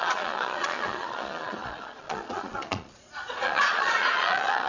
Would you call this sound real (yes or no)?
no